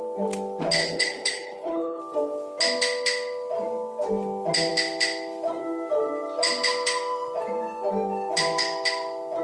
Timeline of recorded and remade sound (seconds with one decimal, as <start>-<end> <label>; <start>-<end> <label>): 0.0-0.8 recorded; 0.8-2.0 remade; 2.0-9.4 recorded